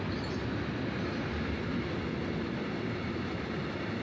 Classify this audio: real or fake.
real